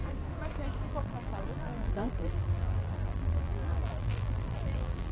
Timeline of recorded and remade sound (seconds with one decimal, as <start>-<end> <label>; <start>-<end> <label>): 0.0-0.9 recorded; 0.9-5.1 remade